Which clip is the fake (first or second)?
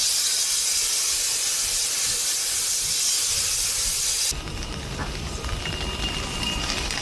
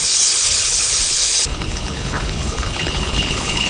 second